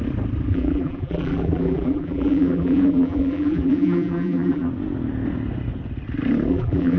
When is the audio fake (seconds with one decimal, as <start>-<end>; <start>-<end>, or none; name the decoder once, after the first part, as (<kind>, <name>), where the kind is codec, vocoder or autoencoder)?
0.5-4.7 (vocoder, BigVGAN v2); 6.5-7.0